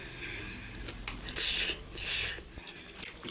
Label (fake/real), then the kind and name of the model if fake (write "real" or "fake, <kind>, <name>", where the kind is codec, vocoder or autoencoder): real